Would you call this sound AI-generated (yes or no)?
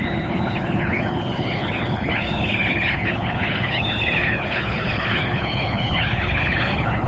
yes